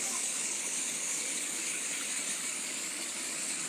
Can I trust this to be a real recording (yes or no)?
no